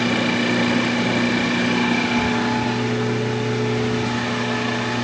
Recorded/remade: recorded